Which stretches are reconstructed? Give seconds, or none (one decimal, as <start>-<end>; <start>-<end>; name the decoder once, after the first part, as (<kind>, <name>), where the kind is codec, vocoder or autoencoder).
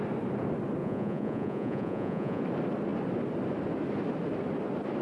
0.8-2.4 (vocoder, Vocos)